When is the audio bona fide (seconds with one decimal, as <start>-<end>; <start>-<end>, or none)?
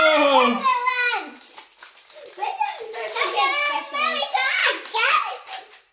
0.0-5.9